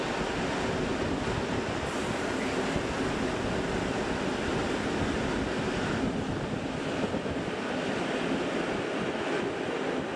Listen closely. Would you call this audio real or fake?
real